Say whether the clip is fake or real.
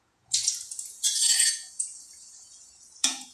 fake